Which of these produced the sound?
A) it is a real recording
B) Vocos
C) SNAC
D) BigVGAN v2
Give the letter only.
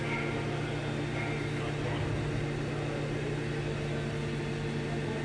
A